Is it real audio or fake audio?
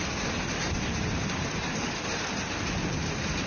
fake